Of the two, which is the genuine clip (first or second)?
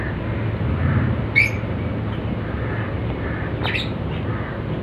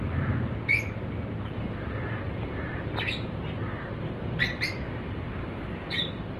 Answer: first